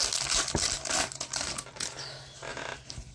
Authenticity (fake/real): real